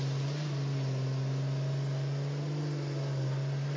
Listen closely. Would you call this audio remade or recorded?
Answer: recorded